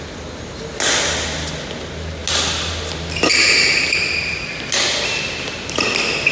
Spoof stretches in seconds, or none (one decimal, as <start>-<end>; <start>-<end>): none